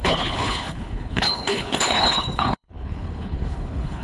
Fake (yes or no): yes